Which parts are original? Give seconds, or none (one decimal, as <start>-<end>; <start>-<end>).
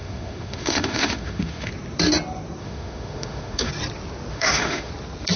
1.7-2.6; 3.7-4.3; 4.9-5.4